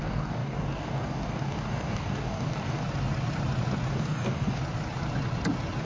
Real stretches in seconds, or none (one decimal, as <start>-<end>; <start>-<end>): 2.8-3.9; 4.6-5.8